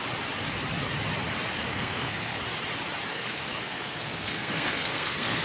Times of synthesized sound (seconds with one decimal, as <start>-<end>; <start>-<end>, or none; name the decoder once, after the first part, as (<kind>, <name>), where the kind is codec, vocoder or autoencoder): 1.7-2.4 (codec, SNAC); 3.1-5.4